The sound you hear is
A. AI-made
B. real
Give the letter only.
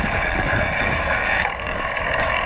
A